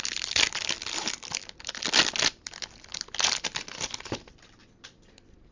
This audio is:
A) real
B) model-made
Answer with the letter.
A